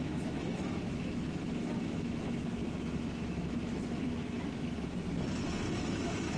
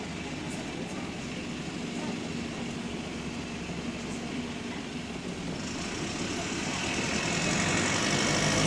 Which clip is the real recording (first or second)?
second